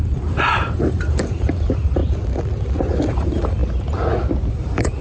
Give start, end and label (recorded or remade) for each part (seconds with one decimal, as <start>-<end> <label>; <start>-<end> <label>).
0.0-2.0 remade; 2.0-3.1 recorded; 3.1-3.6 remade; 3.6-4.5 recorded; 4.5-5.0 remade